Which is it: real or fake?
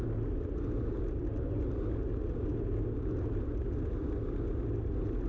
real